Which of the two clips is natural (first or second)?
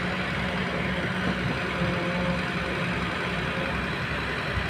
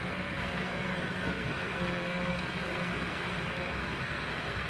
first